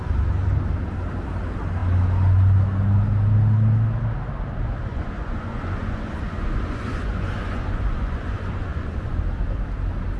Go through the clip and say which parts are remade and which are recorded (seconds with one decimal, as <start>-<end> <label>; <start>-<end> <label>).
0.0-4.9 recorded; 4.9-9.2 remade; 9.2-10.2 recorded